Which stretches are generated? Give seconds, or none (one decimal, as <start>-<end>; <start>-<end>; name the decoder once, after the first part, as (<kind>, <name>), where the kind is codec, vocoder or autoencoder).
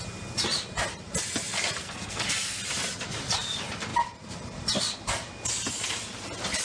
1.8-2.6 (codec, SNAC)